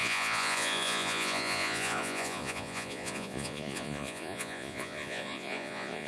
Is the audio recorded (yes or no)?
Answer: no